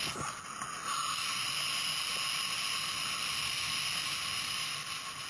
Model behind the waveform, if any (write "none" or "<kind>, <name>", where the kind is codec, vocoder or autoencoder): none